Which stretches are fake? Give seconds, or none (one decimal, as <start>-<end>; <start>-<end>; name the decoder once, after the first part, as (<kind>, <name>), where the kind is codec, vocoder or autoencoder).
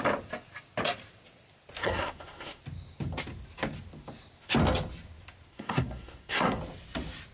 1.8-2.6 (codec, SNAC); 5.5-6.6